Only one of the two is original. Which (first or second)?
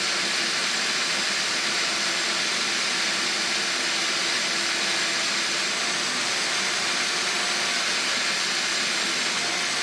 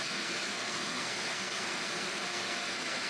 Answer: first